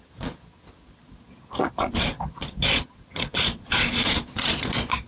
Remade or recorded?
remade